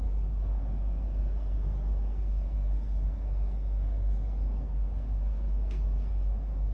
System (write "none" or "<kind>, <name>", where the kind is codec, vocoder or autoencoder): codec, SNAC